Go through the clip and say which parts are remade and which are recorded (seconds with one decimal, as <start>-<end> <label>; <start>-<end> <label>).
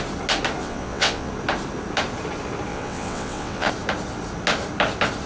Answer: 0.0-0.6 recorded; 0.6-1.3 remade; 1.3-2.7 recorded; 2.7-3.7 remade; 3.7-5.3 recorded